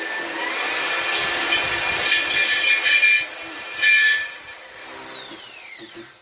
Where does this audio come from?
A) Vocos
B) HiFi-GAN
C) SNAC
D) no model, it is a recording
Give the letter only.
D